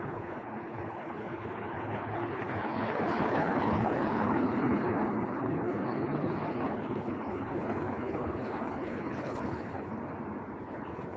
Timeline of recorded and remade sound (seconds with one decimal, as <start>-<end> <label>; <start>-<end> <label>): 0.0-9.9 remade; 9.9-10.6 recorded; 10.6-11.2 remade